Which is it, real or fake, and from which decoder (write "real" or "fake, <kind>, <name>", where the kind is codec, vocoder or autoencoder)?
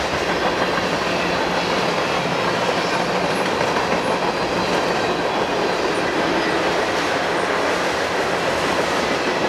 real